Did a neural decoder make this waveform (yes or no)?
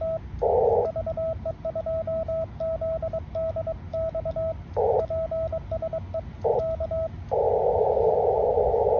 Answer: no